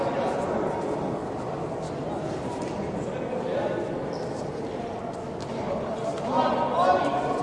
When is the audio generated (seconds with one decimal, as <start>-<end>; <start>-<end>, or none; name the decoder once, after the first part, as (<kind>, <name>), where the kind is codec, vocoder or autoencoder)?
none